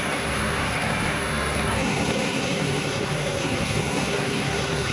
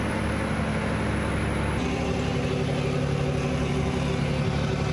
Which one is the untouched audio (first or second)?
second